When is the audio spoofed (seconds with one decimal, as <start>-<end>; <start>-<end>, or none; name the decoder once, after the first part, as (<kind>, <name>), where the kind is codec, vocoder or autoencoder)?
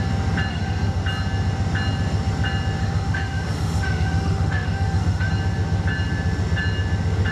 0.5-1.0 (autoencoder, DAC-VAE); 2.8-5.3